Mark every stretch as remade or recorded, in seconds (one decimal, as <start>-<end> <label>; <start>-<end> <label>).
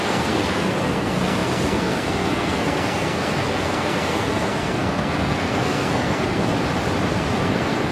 0.0-6.5 remade; 6.5-7.1 recorded; 7.1-7.9 remade